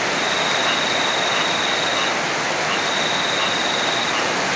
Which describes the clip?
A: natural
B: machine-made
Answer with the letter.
A